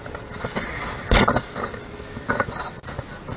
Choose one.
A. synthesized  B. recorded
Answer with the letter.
B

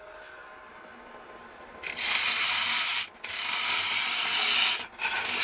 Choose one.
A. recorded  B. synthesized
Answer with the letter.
A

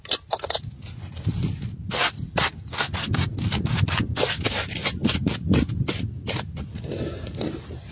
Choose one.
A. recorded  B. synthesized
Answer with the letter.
A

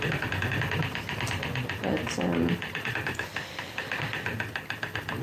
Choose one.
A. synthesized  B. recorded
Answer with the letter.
B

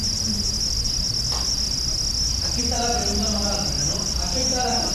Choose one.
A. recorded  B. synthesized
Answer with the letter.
A